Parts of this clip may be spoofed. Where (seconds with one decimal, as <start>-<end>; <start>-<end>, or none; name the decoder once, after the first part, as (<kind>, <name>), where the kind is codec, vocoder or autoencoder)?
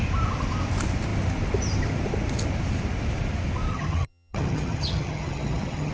3.7-5.9 (vocoder, HiFi-GAN)